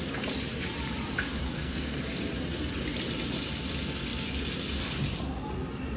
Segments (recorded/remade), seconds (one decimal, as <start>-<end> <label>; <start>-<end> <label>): 0.0-1.4 recorded; 1.4-2.0 remade; 2.0-6.0 recorded